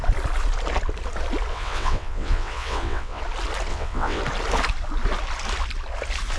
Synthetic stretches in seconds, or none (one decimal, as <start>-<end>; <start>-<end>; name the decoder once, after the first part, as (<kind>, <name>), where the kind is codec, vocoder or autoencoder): 1.5-3.2 (vocoder, WaveNeXt); 3.7-4.2